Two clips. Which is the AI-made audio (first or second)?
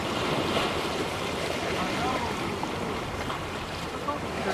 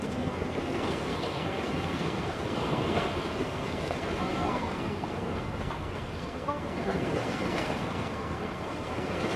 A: second